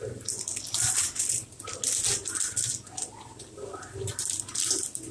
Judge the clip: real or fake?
real